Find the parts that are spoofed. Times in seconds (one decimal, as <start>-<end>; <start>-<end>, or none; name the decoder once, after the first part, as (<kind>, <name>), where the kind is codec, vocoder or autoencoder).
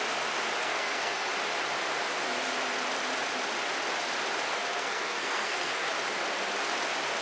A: 0.6-1.3 (codec, SNAC); 4.5-5.9